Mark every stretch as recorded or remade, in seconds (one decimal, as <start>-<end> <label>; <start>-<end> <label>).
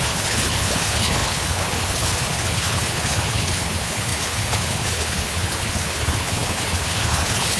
0.0-7.6 remade